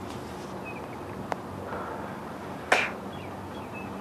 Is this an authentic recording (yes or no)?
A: yes